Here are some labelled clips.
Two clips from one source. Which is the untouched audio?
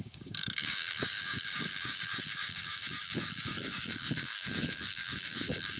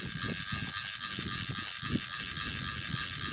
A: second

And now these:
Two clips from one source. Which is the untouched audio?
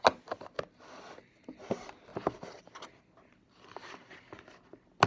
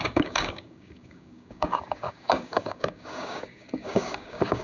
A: first